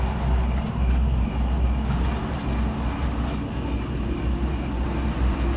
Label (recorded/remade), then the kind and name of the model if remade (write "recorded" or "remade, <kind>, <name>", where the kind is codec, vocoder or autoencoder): recorded